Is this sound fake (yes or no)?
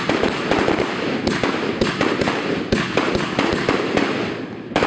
no